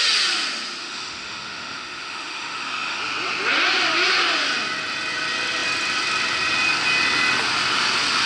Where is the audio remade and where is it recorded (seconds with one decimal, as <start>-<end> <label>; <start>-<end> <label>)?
0.0-0.8 recorded; 0.8-3.0 remade; 3.0-8.3 recorded